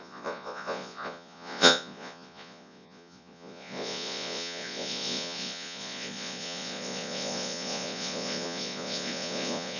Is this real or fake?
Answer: fake